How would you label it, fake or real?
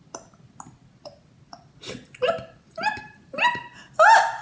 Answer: real